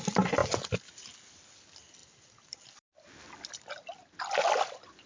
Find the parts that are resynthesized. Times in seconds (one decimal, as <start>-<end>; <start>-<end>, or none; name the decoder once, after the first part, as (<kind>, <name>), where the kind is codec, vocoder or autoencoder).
0.0-5.1 (vocoder, BigVGAN v2)